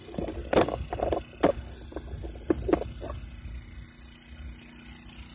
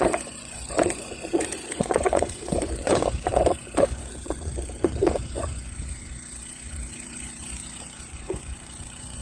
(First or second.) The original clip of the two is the first